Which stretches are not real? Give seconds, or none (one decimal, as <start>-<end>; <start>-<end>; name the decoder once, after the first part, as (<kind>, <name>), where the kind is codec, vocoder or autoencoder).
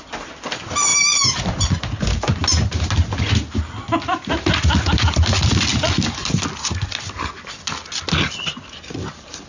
none